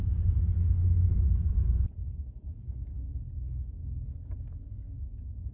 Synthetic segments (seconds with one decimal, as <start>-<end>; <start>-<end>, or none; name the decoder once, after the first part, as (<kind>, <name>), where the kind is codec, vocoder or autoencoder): 0.8-1.5 (autoencoder, DAC-VAE); 2.0-3.2; 3.8-5.5